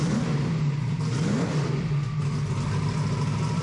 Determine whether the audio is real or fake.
real